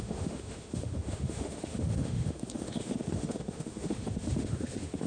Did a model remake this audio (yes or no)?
yes